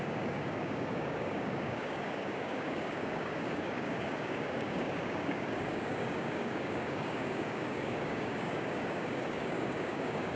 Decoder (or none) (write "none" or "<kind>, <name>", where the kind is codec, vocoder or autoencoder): codec, DAC